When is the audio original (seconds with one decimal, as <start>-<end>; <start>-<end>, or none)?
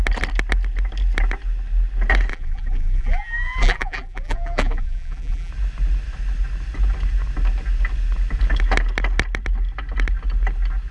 0.0-2.3; 5.5-10.9